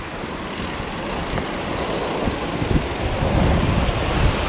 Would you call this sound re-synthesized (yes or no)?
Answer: no